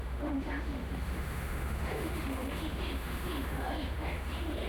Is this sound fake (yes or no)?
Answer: yes